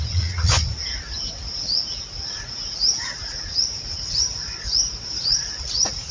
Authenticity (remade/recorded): remade